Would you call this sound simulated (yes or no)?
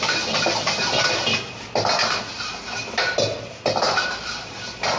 no